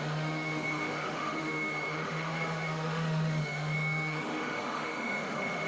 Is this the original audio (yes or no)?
no